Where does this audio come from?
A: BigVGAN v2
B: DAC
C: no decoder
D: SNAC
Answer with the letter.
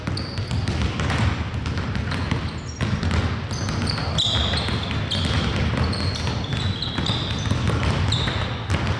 C